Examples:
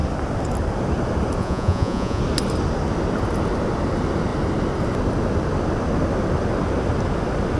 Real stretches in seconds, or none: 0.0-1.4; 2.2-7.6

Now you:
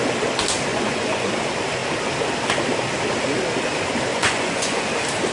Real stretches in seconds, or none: 0.0-0.7; 1.3-4.1; 4.8-5.3

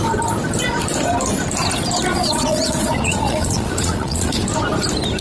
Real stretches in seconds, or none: 0.0-2.1; 4.3-5.2